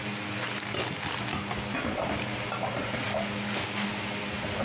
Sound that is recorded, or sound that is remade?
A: recorded